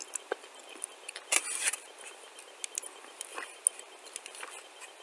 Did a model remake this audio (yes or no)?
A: no